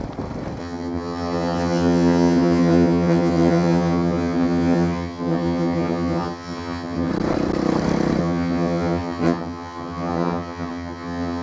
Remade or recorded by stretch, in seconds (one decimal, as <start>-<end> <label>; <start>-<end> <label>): 0.0-0.6 recorded; 0.6-7.1 remade; 7.1-8.2 recorded; 8.2-11.4 remade